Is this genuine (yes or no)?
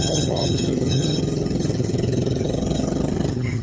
no